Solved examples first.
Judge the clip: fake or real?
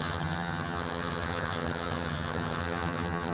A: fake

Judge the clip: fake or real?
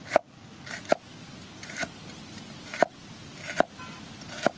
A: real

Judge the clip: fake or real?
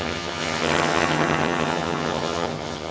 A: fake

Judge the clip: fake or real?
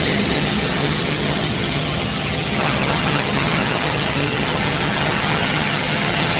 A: fake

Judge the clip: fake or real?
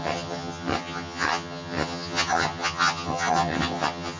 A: fake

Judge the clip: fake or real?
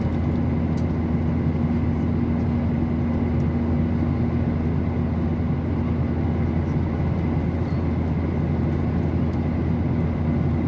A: real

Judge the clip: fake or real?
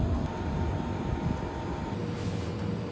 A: real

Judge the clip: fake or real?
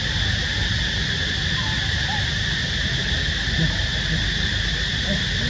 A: real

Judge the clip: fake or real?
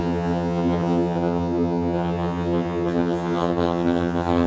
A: fake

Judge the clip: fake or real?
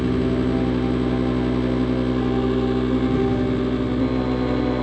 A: real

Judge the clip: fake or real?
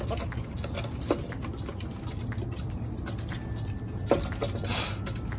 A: real